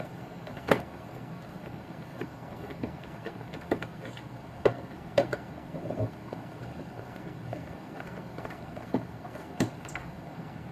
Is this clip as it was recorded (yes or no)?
no